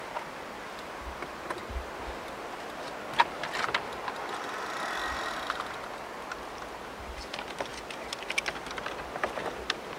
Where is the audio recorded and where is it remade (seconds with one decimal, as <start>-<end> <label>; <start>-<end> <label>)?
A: 0.0-10.0 recorded